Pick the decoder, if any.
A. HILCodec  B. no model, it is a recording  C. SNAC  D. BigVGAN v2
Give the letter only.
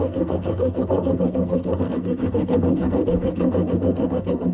C